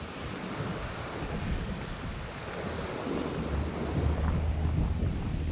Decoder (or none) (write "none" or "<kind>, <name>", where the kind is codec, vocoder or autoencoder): none